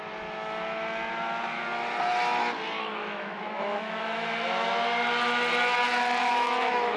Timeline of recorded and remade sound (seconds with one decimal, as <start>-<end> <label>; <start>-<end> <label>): 0.0-2.8 recorded; 2.8-4.7 remade; 4.7-6.2 recorded; 6.2-7.0 remade